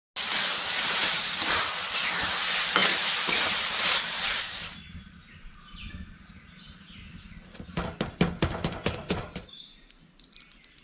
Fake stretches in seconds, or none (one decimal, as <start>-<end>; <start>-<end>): 2.8-7.1

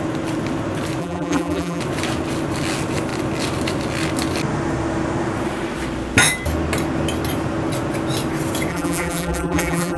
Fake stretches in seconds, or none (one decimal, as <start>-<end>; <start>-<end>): 1.0-1.8; 8.7-10.0

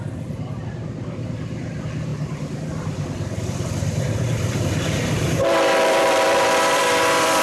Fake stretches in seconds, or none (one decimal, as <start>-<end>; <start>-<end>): 0.0-7.4

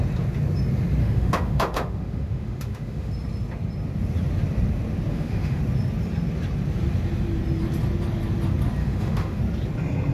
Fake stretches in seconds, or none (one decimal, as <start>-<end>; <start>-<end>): 1.0-3.1; 5.1-5.6; 8.8-9.4

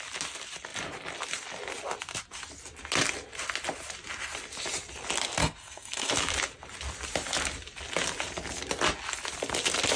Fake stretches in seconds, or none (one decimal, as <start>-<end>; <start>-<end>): 5.4-6.1

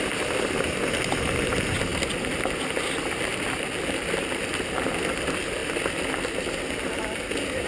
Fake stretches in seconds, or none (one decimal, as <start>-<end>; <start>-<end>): none